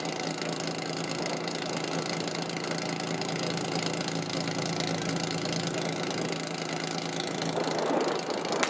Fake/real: real